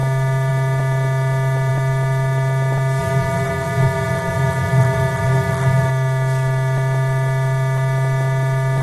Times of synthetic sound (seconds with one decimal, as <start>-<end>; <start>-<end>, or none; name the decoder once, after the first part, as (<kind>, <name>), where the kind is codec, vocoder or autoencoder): 3.0-5.9 (vocoder, BigVGAN v2)

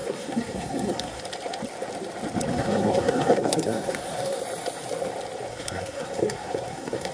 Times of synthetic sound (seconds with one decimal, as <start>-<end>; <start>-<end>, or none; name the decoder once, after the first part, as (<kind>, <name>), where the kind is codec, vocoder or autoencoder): 0.0-1.2 (codec, SNAC); 2.5-4.4; 5.5-7.1

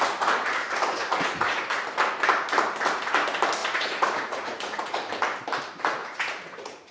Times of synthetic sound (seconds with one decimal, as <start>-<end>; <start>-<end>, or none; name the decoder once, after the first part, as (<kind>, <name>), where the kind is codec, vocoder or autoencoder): 0.9-1.6 (vocoder, Vocos); 3.6-5.1; 6.0-6.9

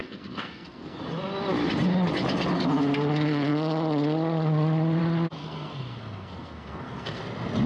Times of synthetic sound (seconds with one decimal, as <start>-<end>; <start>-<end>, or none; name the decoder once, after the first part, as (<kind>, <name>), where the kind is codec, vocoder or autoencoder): 0.0-1.0 (codec, SNAC); 5.4-7.2

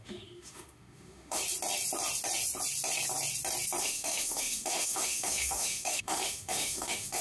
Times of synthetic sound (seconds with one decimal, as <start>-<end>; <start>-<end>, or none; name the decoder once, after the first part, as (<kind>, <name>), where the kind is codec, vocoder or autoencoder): 0.0-1.4 (autoencoder, DAC-VAE); 3.8-7.2

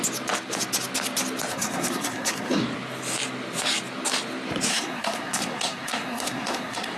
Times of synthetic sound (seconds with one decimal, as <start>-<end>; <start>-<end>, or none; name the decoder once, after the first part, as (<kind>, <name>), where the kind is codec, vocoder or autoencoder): 1.5-2.6 (codec, SNAC); 4.7-7.0

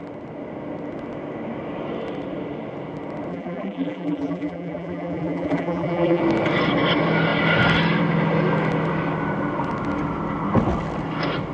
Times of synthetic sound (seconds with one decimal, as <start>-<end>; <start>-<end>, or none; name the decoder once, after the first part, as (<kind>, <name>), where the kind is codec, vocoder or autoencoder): 3.3-6.2 (vocoder, BigVGAN v2)

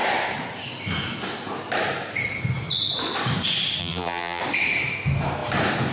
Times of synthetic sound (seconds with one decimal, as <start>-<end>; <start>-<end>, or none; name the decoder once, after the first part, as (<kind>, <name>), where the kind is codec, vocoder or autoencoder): 3.8-4.4 (vocoder, BigVGAN v2)